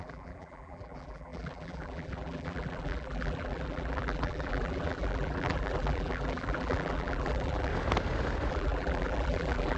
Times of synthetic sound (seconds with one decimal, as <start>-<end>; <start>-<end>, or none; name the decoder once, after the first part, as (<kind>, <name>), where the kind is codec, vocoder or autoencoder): 0.0-7.7 (vocoder, BigVGAN v2); 8.5-9.8